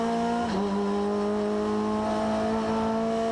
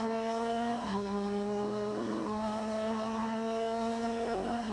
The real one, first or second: first